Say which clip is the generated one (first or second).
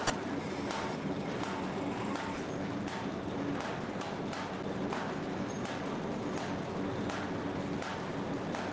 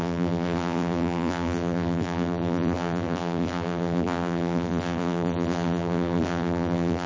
second